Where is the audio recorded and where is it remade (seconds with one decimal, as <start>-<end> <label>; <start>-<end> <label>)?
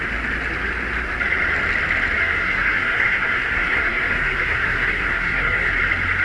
0.0-2.2 recorded; 2.2-5.7 remade; 5.7-6.2 recorded